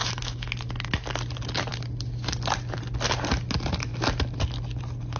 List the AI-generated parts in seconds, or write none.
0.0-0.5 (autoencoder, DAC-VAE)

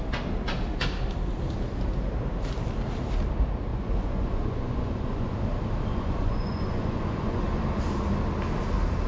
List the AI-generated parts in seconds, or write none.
3.7-5.3 (vocoder, Vocos); 5.9-7.4

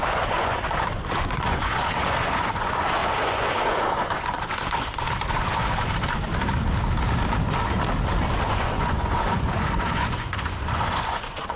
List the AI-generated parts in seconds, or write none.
0.0-6.3 (vocoder, Vocos); 8.5-11.6

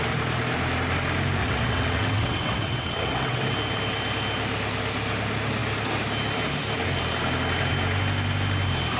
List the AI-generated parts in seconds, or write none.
1.4-3.4 (vocoder, WaveNeXt)

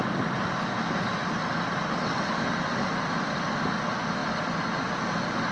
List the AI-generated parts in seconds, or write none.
1.2-2.8 (vocoder, BigVGAN v2); 4.2-5.5

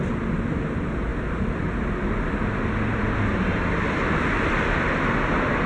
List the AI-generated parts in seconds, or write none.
none

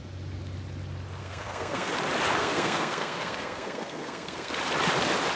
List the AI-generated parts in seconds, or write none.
1.2-1.9 (codec, SNAC); 2.4-4.5

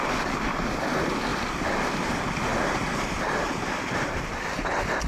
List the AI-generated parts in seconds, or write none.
1.3-1.9 (vocoder, BigVGAN v2); 2.5-4.3